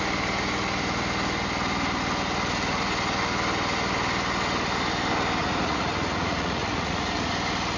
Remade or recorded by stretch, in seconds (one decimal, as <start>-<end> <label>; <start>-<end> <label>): 0.0-5.4 recorded; 5.4-7.3 remade; 7.3-7.8 recorded